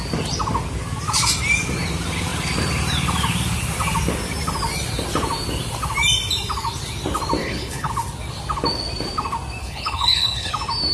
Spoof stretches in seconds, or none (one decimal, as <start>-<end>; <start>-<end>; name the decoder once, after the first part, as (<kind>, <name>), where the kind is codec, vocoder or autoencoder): 7.4-7.9 (codec, HILCodec); 9.6-10.5